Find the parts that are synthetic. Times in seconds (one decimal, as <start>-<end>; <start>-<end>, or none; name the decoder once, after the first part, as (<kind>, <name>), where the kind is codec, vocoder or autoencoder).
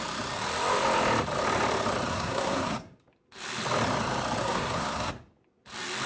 2.1-3.0 (codec, SNAC); 4.4-5.1